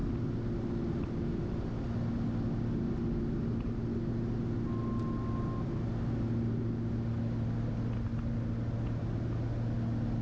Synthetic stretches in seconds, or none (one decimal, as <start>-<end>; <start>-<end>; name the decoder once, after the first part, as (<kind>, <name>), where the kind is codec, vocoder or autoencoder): none